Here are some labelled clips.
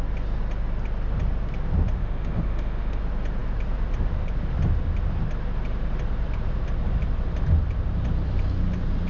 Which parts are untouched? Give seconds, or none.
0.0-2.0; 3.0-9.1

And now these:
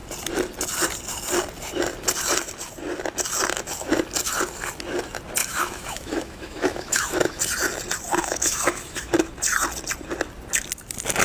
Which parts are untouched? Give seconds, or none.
0.0-5.4; 7.4-8.2; 9.1-11.2

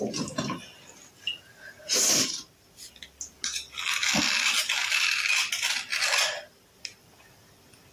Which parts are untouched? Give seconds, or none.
0.0-7.9

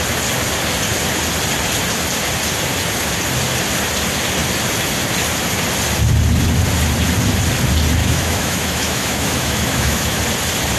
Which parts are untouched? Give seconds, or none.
0.0-8.0; 10.2-10.8